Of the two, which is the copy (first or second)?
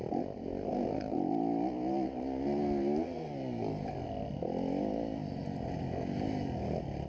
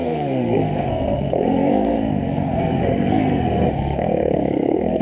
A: second